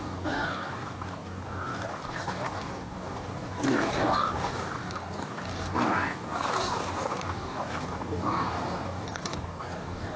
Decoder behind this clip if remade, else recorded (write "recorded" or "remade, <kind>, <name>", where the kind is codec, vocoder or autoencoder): remade, codec, DAC